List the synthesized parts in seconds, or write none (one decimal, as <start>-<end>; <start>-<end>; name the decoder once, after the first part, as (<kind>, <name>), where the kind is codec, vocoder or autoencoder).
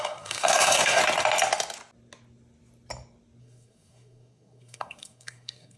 0.0-1.0 (codec, SNAC); 3.4-5.8